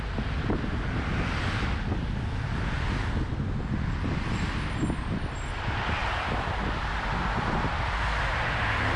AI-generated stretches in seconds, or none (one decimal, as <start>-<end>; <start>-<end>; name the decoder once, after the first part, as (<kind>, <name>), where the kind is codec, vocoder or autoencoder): none

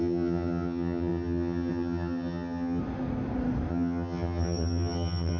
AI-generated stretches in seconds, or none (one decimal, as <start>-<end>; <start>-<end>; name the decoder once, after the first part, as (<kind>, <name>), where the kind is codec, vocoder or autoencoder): 0.0-2.8 (vocoder, HiFi-GAN); 3.7-5.4

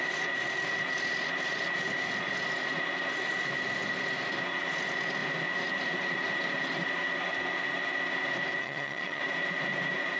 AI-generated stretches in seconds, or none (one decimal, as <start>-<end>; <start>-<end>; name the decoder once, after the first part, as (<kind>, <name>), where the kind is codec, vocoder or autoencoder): 8.6-9.2 (vocoder, HiFi-GAN)

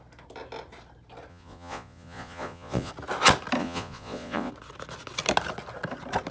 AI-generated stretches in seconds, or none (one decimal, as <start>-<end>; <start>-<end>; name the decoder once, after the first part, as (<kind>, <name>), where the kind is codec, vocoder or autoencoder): 1.3-2.9 (vocoder, Vocos); 3.6-4.5

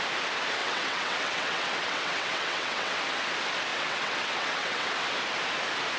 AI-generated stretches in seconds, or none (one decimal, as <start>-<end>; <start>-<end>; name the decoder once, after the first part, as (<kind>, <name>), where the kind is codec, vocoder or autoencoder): 0.6-3.0 (vocoder, WaveNeXt); 3.7-4.9

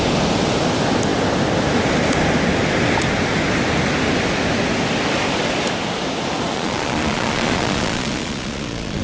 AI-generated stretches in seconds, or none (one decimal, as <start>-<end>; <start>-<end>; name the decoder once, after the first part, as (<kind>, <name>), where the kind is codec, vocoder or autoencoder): 6.5-9.0 (vocoder, Vocos)